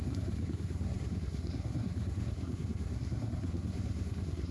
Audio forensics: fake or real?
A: fake